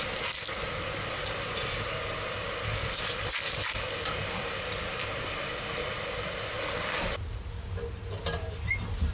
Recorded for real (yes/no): yes